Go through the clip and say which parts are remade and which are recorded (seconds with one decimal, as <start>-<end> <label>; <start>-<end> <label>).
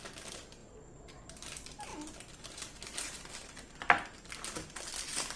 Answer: 0.0-5.4 recorded